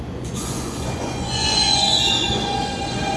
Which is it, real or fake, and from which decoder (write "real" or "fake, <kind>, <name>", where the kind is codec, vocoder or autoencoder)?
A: fake, vocoder, Vocos